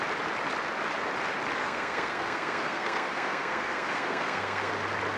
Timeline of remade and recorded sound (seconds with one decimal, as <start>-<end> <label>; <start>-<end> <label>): 0.0-1.6 recorded; 1.6-4.7 remade; 4.7-5.2 recorded